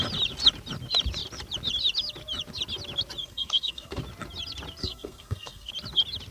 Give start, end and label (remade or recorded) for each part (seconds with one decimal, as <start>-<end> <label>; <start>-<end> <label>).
0.0-3.2 recorded; 3.2-4.0 remade; 4.0-4.8 recorded; 4.8-5.7 remade; 5.7-6.3 recorded